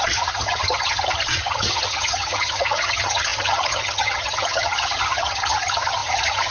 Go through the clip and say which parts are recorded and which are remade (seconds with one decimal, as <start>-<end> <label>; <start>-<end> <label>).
0.0-6.5 remade